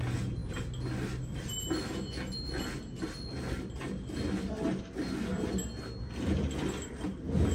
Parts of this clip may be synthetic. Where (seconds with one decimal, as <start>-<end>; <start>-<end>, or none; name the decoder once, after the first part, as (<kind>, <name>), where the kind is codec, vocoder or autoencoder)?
none